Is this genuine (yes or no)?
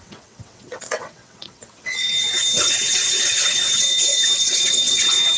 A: no